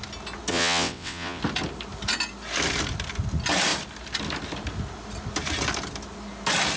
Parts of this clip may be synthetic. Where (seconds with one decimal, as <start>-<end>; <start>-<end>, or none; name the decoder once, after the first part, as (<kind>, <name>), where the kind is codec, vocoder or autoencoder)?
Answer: 0.5-1.4 (vocoder, WaveNeXt)